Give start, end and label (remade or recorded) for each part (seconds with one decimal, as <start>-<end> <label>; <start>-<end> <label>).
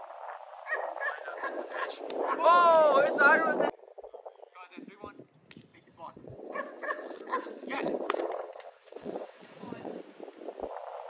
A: 0.0-1.3 recorded; 1.3-1.9 remade; 1.9-5.7 recorded; 5.7-10.0 remade; 10.0-11.1 recorded